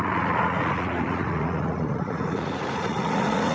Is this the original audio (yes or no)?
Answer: no